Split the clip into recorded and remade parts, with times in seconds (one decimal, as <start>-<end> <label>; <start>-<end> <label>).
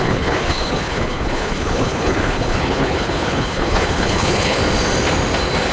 0.0-4.6 remade; 4.6-5.7 recorded